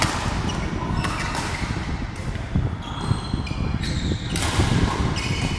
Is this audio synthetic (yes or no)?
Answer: no